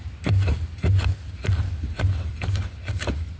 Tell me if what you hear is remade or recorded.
recorded